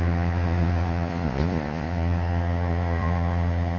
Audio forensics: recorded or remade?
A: remade